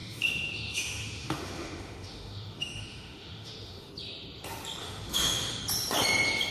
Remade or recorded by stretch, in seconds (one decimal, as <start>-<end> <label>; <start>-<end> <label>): 0.0-3.9 remade; 3.9-4.8 recorded; 4.8-5.6 remade; 5.6-6.5 recorded